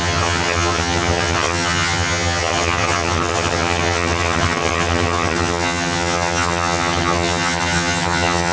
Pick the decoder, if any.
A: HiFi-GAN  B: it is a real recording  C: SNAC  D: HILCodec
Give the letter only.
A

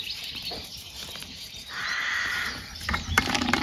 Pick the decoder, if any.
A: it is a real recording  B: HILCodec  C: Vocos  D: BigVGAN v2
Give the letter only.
D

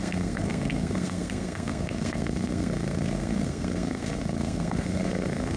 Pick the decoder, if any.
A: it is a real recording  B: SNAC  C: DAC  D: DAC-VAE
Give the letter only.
B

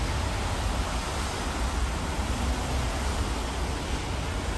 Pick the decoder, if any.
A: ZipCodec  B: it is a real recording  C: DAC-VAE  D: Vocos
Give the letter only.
B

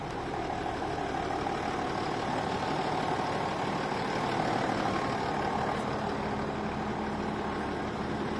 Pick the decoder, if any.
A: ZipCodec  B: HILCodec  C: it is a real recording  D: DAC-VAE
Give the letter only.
C